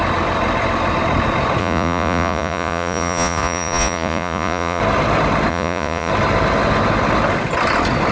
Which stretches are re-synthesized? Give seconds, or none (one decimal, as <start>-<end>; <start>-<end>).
1.6-4.8; 5.5-6.1

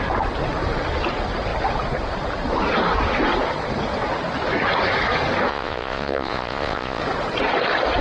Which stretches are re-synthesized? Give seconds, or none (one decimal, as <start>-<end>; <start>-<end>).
5.5-7.0

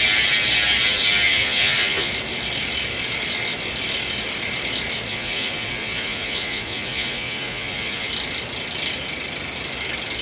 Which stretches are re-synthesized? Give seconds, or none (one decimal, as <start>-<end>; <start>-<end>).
1.3-2.1; 5.1-8.1

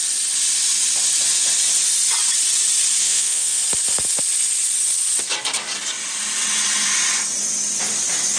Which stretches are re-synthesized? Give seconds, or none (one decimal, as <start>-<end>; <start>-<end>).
3.0-3.6

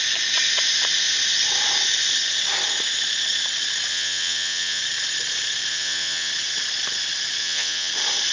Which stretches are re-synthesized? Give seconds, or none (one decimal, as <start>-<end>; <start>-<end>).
3.9-4.8; 5.7-6.3; 7.4-7.9

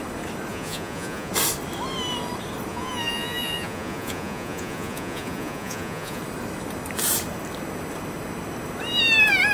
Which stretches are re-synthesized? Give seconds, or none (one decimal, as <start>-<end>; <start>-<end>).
0.5-1.3; 2.7-6.2

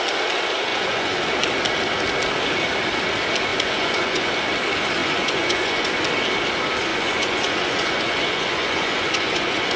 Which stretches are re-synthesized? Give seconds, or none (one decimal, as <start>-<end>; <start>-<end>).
0.7-1.2; 3.5-4.3; 5.0-5.9; 6.9-9.8

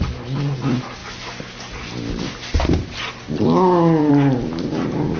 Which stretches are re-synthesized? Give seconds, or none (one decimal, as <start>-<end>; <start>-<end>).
none